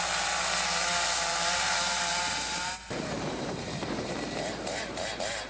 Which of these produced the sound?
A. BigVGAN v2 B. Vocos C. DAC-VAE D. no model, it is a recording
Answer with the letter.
A